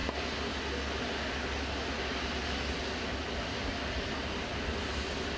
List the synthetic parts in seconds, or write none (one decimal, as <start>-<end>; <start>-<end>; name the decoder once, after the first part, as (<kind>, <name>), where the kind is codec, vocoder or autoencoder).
none